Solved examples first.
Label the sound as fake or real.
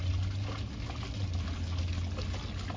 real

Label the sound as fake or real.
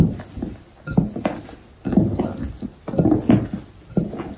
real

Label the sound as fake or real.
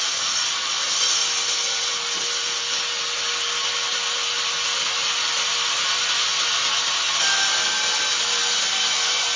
real